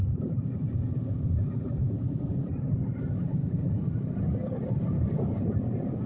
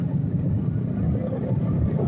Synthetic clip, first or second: first